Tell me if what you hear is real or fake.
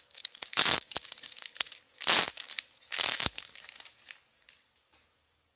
fake